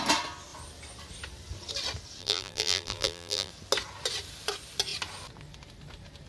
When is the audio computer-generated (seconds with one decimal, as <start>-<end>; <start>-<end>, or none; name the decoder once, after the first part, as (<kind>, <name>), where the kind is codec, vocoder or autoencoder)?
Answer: 2.2-3.5 (vocoder, BigVGAN v2)